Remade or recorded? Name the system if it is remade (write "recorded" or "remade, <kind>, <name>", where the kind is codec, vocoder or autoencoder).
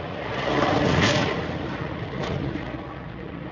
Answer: remade, vocoder, Vocos